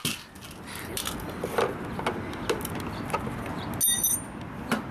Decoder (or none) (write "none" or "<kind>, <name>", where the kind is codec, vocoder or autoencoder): none